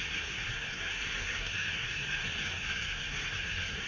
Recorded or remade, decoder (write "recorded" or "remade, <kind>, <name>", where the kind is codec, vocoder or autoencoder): remade, codec, SNAC